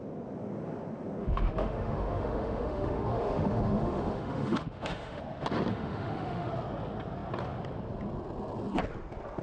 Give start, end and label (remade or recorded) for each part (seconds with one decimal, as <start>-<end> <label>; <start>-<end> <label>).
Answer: 0.0-1.2 recorded; 1.2-5.2 remade; 5.2-5.7 recorded; 5.7-6.5 remade; 6.5-9.4 recorded